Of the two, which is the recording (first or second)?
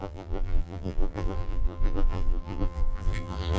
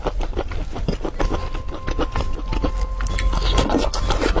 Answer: second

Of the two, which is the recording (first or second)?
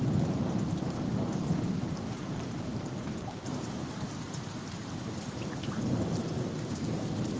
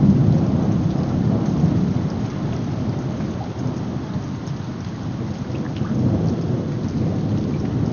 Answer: second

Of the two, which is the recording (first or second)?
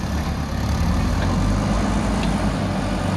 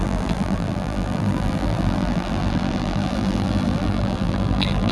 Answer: first